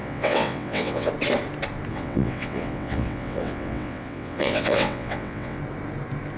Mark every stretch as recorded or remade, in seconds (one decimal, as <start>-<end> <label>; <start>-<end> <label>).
0.0-1.1 remade; 1.1-1.9 recorded; 1.9-5.6 remade; 5.6-6.4 recorded

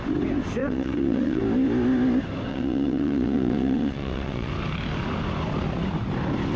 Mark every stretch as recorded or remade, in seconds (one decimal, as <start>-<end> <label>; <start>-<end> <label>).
0.0-0.6 recorded; 0.6-1.4 remade; 1.4-2.5 recorded; 2.5-4.5 remade; 4.5-6.6 recorded

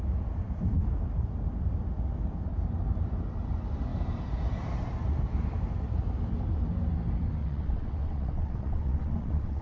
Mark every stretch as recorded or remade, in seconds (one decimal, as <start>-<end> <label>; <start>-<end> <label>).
0.0-7.4 recorded; 7.4-9.6 remade

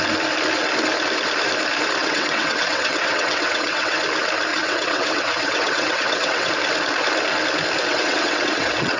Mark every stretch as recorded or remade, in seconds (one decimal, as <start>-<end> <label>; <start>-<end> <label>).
0.0-2.0 recorded; 2.0-4.0 remade; 4.0-4.5 recorded; 4.5-6.5 remade; 6.5-7.8 recorded; 7.8-9.0 remade

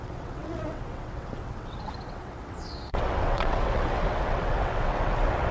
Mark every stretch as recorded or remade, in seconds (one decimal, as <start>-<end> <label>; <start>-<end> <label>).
0.0-5.5 remade

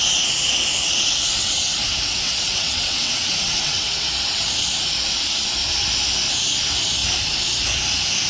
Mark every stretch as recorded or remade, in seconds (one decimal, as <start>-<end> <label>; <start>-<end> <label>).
0.0-1.4 recorded; 1.4-4.5 remade; 4.5-8.3 recorded